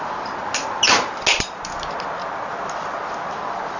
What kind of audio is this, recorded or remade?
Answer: recorded